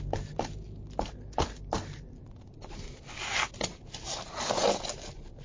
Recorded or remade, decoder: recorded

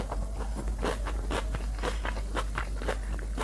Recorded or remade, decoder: recorded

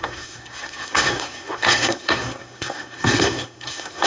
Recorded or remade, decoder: remade, codec, SNAC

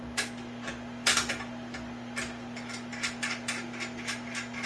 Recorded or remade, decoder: recorded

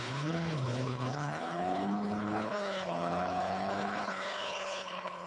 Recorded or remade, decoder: remade, codec, HILCodec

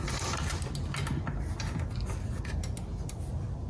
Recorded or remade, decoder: recorded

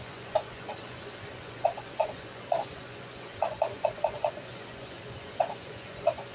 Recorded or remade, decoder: remade, vocoder, Vocos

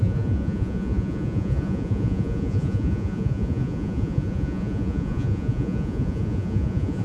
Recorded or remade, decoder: remade, vocoder, Vocos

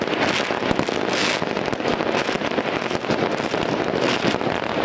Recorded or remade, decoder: recorded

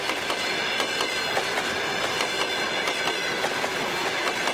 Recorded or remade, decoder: recorded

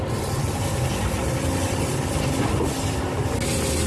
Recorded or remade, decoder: recorded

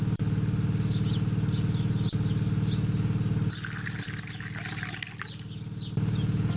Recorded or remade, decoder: recorded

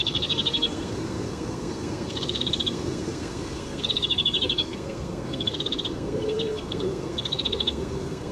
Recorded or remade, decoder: remade, codec, SNAC